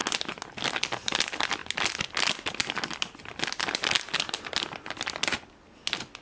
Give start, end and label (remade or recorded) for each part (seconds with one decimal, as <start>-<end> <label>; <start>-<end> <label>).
0.0-6.2 recorded